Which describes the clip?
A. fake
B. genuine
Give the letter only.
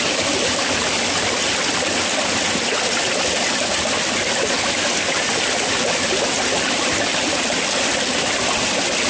B